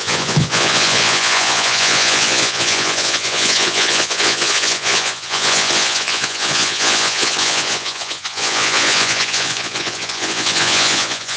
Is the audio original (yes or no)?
no